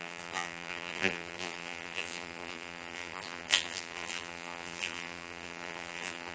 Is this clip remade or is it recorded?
remade